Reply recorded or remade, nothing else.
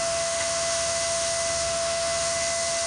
remade